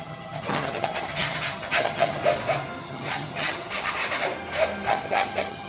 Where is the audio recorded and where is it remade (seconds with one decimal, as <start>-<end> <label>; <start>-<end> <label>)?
0.0-2.2 remade; 2.2-2.8 recorded; 2.8-4.0 remade; 4.0-4.9 recorded; 4.9-5.7 remade